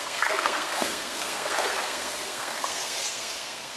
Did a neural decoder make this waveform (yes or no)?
yes